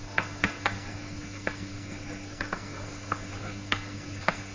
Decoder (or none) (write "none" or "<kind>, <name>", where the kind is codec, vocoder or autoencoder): codec, SNAC